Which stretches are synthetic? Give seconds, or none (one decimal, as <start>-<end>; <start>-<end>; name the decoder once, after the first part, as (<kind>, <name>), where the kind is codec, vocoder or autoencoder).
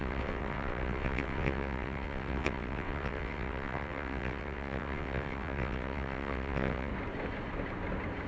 0.0-6.9 (vocoder, WaveNeXt)